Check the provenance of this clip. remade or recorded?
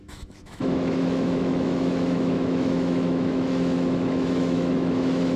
remade